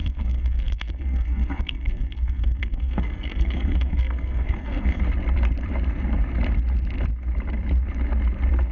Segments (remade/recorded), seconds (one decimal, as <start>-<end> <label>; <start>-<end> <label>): 0.0-5.0 remade; 5.0-8.7 recorded